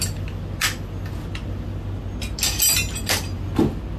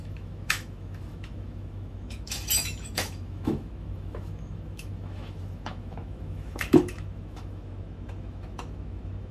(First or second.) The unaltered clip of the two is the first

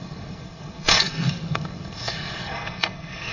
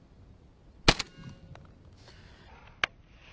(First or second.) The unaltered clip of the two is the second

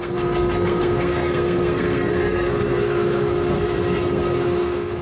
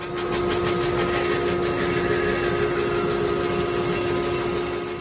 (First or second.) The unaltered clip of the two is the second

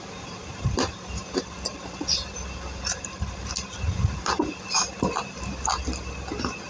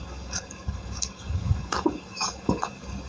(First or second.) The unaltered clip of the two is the first